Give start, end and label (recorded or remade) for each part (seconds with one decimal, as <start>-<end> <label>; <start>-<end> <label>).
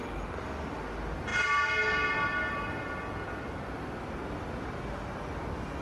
0.0-5.8 recorded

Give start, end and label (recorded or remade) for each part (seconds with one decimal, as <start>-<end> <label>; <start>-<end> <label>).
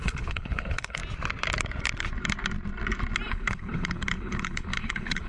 0.0-1.0 remade; 1.0-3.3 recorded; 3.3-5.3 remade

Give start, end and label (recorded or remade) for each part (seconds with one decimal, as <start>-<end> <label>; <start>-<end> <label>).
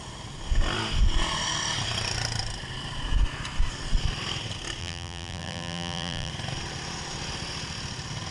0.0-4.8 recorded; 4.8-6.3 remade; 6.3-8.3 recorded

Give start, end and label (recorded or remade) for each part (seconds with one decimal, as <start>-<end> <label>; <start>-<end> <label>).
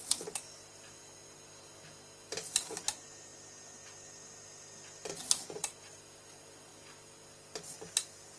0.0-8.4 recorded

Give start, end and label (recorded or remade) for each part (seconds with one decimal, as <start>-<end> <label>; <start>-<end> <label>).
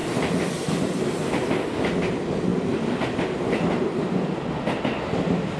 0.0-5.6 recorded